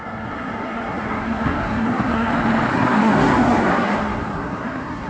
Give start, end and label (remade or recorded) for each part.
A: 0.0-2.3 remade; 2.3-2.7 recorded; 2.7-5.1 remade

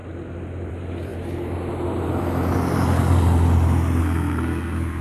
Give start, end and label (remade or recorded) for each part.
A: 0.0-4.0 recorded; 4.0-5.0 remade

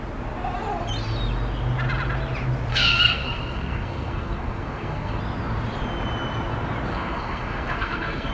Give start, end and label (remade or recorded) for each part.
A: 0.0-2.7 recorded; 2.7-5.2 remade; 5.2-6.9 recorded; 6.9-8.3 remade

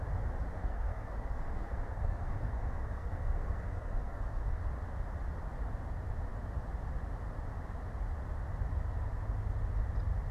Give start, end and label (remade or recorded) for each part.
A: 0.0-0.6 recorded; 0.6-4.6 remade; 4.6-10.3 recorded